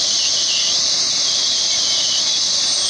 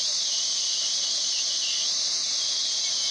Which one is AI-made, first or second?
first